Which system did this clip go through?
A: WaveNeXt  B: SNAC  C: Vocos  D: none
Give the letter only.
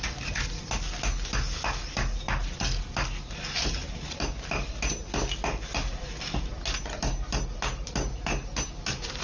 D